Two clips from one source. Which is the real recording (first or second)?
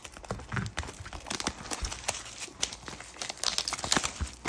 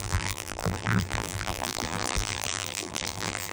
first